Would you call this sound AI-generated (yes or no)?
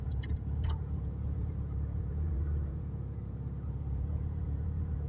yes